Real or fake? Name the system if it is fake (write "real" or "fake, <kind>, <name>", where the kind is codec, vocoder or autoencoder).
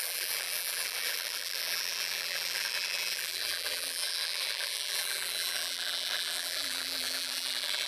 fake, vocoder, BigVGAN v2